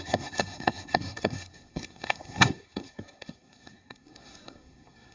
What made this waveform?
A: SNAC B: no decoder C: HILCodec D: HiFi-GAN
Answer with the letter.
A